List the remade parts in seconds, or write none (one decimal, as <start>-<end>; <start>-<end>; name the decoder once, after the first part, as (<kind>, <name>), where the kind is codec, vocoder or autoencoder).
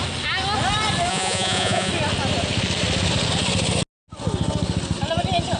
1.1-1.9 (vocoder, Vocos)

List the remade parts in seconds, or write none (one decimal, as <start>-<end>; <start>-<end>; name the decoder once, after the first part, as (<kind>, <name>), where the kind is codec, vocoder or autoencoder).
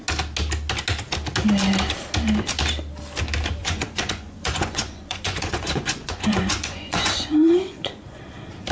3.6-8.2 (vocoder, Vocos)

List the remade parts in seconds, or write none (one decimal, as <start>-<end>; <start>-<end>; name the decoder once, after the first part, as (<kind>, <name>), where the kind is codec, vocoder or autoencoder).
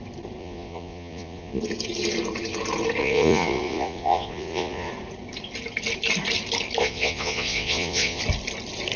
0.4-1.6 (vocoder, Vocos); 3.0-4.9; 6.8-8.2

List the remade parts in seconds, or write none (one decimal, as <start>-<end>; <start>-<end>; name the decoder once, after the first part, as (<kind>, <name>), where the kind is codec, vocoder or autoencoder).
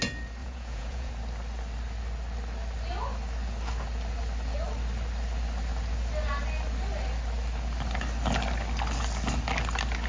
0.4-1.1 (vocoder, Vocos)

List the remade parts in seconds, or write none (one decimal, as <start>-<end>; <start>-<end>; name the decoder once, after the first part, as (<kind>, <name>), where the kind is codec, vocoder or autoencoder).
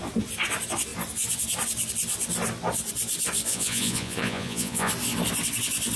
3.5-4.9 (vocoder, Vocos)